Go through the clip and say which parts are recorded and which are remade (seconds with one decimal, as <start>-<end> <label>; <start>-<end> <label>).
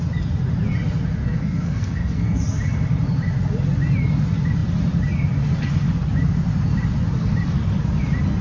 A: 0.0-1.2 recorded; 1.2-2.4 remade; 2.4-8.4 recorded